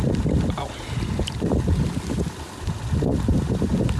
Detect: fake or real real